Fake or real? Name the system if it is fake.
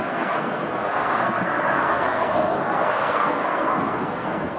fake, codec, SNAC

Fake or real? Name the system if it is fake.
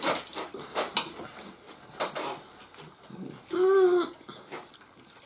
real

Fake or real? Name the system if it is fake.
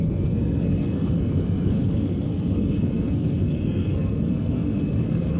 fake, codec, SNAC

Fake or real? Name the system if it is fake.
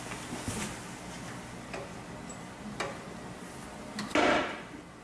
real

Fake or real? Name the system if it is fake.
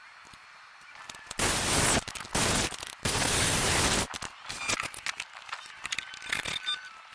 real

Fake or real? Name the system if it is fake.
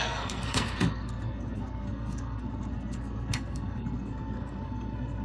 fake, codec, SNAC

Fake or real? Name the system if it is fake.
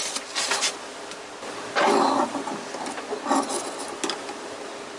real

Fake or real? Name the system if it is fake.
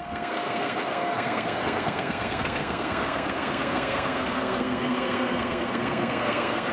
fake, codec, SNAC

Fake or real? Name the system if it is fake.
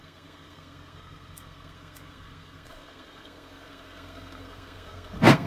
fake, codec, SNAC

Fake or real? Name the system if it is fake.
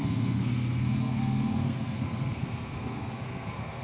fake, codec, SNAC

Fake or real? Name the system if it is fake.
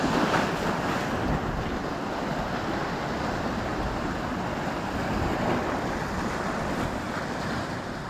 real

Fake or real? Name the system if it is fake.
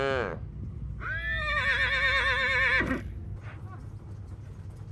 real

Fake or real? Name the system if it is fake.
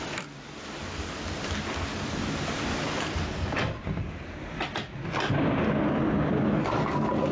real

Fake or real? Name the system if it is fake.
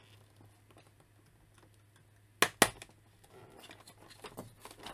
real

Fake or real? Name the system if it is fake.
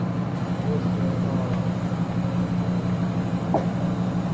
real